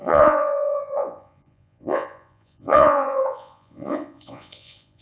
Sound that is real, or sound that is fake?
fake